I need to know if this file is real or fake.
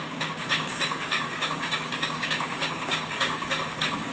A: fake